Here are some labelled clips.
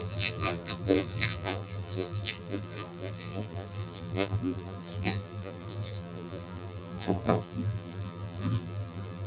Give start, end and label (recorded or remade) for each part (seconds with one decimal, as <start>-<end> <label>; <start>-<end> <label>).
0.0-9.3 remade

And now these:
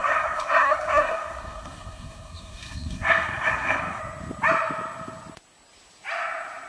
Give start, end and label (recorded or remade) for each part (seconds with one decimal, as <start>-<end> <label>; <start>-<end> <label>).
0.0-4.0 remade; 4.0-6.7 recorded

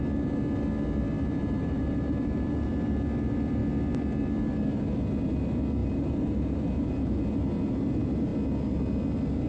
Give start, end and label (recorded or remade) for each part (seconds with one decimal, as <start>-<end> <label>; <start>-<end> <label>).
0.0-1.4 recorded; 1.4-2.7 remade; 2.7-5.8 recorded; 5.8-7.2 remade; 7.2-9.5 recorded

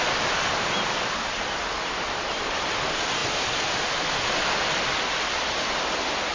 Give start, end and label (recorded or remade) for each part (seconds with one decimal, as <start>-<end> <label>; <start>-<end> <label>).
0.0-6.3 recorded

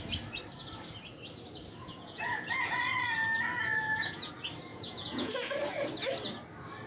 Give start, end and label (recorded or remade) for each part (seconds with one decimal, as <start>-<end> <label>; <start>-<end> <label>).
0.0-1.8 recorded; 1.8-2.5 remade; 2.5-3.7 recorded; 3.7-4.3 remade; 4.3-4.7 recorded; 4.7-5.3 remade; 5.3-6.9 recorded

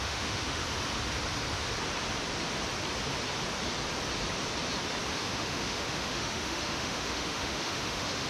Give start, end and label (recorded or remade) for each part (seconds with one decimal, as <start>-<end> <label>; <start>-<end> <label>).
0.0-0.6 remade; 0.6-5.1 recorded; 5.1-8.3 remade

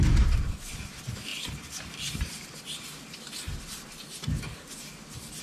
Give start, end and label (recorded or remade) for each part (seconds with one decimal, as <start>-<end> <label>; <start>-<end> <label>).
0.0-1.3 recorded; 1.3-2.6 remade; 2.6-5.4 recorded

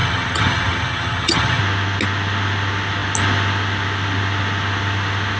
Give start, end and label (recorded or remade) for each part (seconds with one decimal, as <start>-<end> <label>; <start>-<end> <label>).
0.0-1.6 remade; 1.6-5.4 recorded